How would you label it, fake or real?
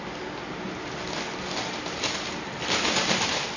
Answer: real